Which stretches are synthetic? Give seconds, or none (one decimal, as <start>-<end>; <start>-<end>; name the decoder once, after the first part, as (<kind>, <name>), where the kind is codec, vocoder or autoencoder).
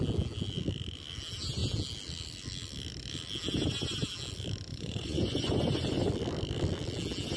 4.7-6.1 (vocoder, Vocos)